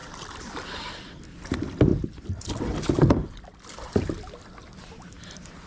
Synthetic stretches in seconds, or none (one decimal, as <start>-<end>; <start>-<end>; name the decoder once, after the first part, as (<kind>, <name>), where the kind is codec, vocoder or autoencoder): 0.0-0.9 (vocoder, BigVGAN v2); 1.9-4.0